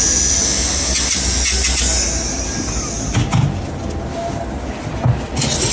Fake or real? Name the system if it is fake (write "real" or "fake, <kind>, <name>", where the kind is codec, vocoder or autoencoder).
real